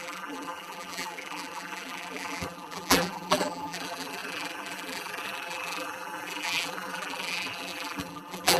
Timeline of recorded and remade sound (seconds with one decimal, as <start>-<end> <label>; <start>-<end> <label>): 0.0-8.6 remade

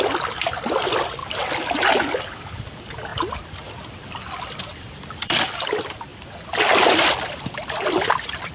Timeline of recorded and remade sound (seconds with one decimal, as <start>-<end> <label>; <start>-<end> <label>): 0.0-1.2 remade; 1.2-2.2 recorded; 2.2-8.5 remade

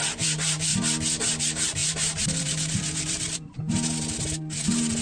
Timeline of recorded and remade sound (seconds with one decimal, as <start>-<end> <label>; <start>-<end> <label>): 0.0-0.7 remade; 0.7-1.4 recorded; 1.4-5.0 remade

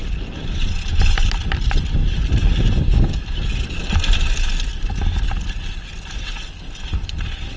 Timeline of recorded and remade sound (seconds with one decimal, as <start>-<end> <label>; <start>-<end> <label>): 0.0-7.6 recorded

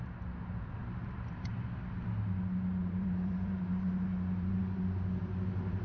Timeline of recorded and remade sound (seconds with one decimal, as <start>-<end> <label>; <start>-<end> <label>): 0.0-0.8 recorded; 0.8-1.5 remade; 1.5-2.8 recorded; 2.8-4.6 remade; 4.6-5.8 recorded

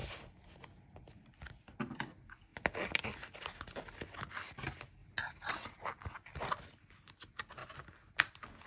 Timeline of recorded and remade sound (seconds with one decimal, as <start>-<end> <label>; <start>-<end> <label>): 0.0-1.6 remade; 1.6-8.7 recorded

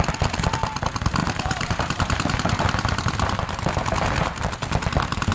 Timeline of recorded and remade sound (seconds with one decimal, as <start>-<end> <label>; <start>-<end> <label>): 0.0-1.2 recorded; 1.2-4.4 remade; 4.4-5.3 recorded

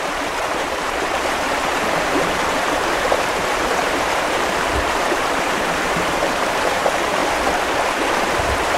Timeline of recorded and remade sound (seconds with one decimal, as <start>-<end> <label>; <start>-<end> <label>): 0.0-7.2 remade; 7.2-7.9 recorded; 7.9-8.8 remade